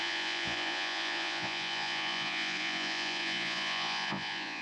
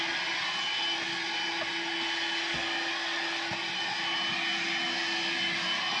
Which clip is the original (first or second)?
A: second